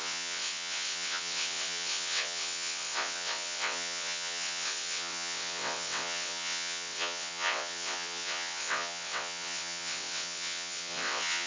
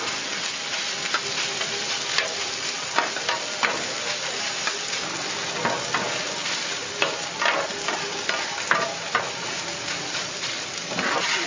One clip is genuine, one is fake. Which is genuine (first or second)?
second